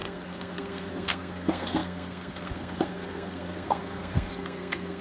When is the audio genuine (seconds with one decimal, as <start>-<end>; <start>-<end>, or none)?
none